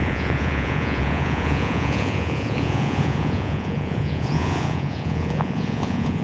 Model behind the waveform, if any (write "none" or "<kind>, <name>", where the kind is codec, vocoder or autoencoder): vocoder, Vocos